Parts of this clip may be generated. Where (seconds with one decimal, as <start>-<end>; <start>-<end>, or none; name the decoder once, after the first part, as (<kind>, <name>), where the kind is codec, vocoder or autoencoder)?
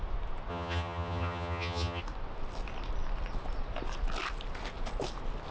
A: 0.5-2.0 (vocoder, HiFi-GAN)